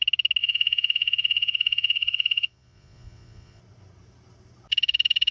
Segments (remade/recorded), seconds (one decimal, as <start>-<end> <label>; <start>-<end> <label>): 0.0-0.4 recorded; 0.4-3.6 remade; 3.6-5.3 recorded